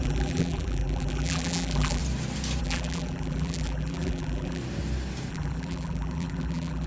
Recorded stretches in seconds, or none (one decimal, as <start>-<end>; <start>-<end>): 2.0-2.6; 4.6-5.3